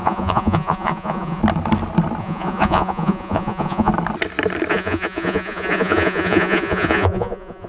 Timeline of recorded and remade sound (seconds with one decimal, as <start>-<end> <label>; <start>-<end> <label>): 0.0-1.4 remade; 1.4-2.2 recorded; 2.2-3.9 remade; 3.9-4.7 recorded; 4.7-7.7 remade